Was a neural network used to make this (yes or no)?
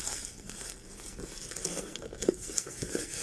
yes